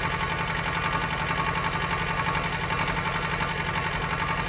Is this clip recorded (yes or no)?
yes